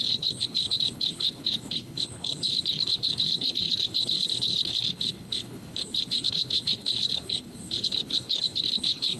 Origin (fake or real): fake